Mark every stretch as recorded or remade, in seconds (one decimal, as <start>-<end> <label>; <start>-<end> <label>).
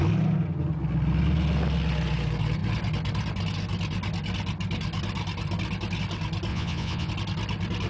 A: 0.0-6.5 recorded; 6.5-7.1 remade; 7.1-7.9 recorded